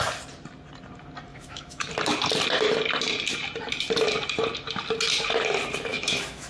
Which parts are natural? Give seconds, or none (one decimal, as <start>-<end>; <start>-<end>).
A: 0.0-1.3; 1.9-5.9